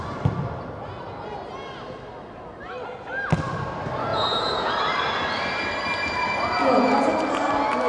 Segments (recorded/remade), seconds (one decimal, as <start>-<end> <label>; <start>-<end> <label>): 0.0-4.1 recorded; 4.1-4.7 remade; 4.7-6.6 recorded; 6.6-7.1 remade; 7.1-7.9 recorded